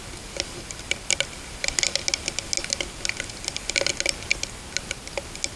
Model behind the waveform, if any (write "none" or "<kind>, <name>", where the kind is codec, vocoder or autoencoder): none